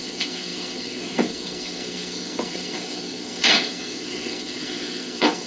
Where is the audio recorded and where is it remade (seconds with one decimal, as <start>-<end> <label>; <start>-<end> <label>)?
0.0-5.5 remade